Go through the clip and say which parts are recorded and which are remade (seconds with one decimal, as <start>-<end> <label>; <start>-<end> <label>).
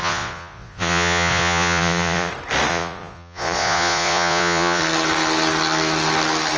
0.0-2.3 remade; 2.3-2.7 recorded; 2.7-4.8 remade; 4.8-6.6 recorded